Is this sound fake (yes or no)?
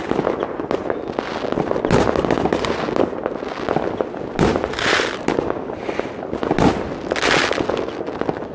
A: no